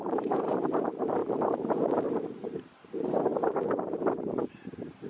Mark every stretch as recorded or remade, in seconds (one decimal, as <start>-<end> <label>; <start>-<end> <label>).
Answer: 0.0-5.1 remade